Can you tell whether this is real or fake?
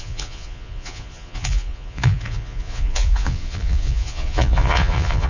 fake